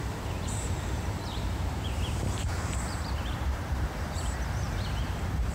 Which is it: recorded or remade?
remade